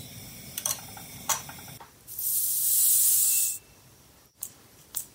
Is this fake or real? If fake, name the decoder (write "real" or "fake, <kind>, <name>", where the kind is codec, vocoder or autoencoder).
fake, vocoder, BigVGAN v2